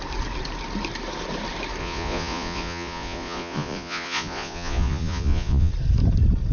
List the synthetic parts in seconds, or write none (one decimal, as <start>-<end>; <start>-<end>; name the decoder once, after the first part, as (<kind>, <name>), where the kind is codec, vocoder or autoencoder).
1.8-5.7 (vocoder, Vocos)